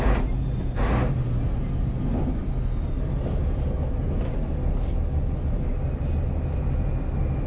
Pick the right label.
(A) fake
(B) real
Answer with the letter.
B